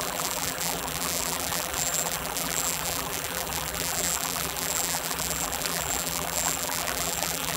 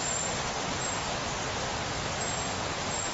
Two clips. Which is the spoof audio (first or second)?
first